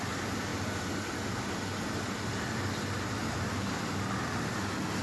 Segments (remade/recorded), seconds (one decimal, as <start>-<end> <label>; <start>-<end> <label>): 0.0-5.0 recorded

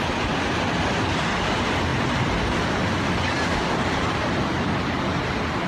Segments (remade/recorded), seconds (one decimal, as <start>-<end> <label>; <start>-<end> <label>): 0.0-5.7 recorded

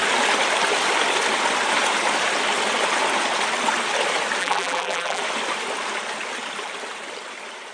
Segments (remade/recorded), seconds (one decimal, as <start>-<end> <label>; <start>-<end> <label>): 0.0-4.4 recorded; 4.4-5.2 remade; 5.2-7.7 recorded

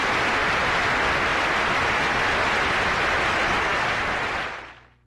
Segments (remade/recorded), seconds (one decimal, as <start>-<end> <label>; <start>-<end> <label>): 0.0-0.4 recorded; 0.4-0.9 remade; 0.9-5.1 recorded

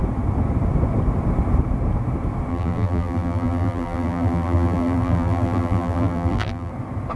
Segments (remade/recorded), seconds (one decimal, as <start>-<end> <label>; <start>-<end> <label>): 0.0-2.5 recorded; 2.5-6.7 remade; 6.7-7.2 recorded